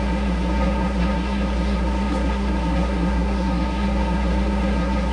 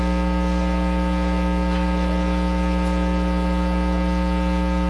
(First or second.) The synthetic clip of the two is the first